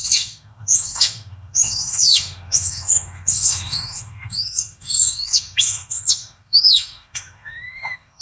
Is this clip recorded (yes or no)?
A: no